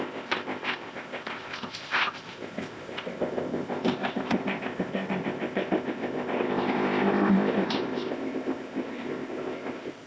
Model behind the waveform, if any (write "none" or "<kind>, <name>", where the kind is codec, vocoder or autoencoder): codec, ZipCodec